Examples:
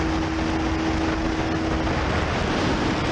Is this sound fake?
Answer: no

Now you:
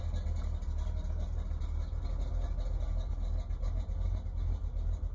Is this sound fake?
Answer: no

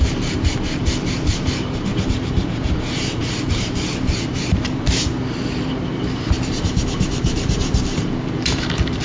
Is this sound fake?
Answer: yes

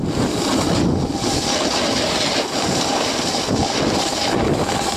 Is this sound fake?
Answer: no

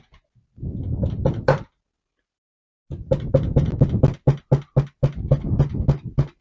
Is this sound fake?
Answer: no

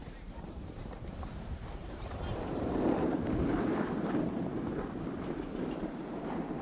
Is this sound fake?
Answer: yes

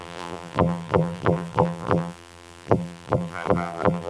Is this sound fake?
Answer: yes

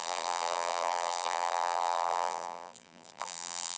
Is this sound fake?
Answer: yes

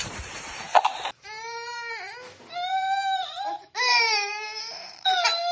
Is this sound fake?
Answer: yes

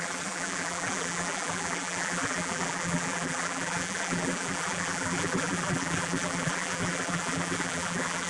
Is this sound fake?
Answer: yes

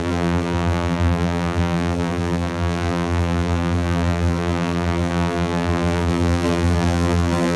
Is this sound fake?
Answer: yes